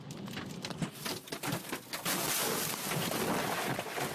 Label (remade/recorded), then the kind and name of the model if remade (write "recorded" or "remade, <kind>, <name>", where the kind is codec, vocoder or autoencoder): recorded